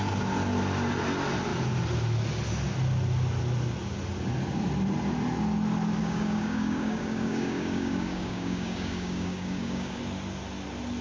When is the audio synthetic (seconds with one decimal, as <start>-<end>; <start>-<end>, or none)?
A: 6.0-10.0